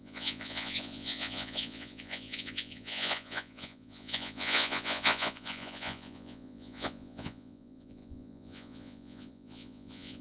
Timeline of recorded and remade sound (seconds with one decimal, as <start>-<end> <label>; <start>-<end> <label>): 0.0-10.2 remade